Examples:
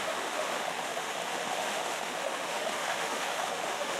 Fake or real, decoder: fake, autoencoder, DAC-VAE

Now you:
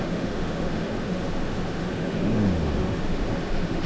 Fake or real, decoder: fake, autoencoder, DAC-VAE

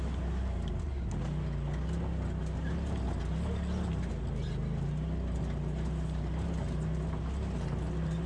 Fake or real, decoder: real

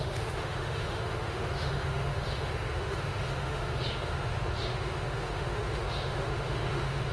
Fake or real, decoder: fake, autoencoder, DAC-VAE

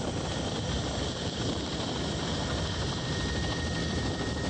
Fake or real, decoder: real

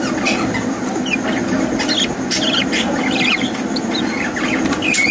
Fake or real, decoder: real